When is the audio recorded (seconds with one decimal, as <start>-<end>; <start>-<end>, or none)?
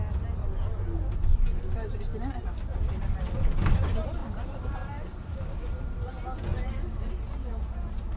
0.0-1.3; 1.9-4.2; 6.1-8.2